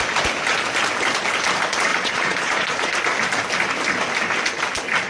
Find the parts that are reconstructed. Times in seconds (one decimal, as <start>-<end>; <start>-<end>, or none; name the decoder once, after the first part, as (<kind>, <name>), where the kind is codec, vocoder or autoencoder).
1.9-2.9 (vocoder, Vocos)